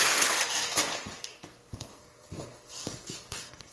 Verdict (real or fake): fake